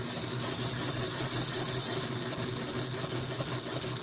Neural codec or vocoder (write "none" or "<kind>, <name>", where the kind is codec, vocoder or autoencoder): none